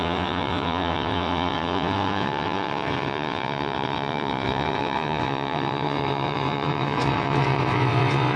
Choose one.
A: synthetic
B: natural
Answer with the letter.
A